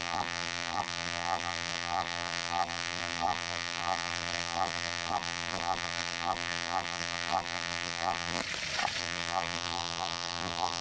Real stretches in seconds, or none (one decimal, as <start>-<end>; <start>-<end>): 8.4-9.0